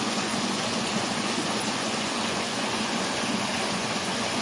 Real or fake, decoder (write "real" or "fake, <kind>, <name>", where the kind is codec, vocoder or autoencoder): fake, vocoder, Vocos